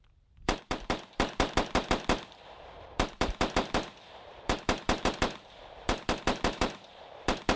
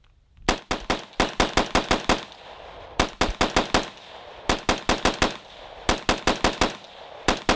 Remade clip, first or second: first